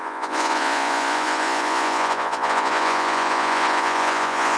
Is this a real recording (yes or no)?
no